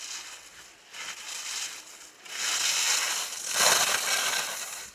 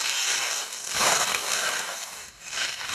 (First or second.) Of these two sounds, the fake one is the second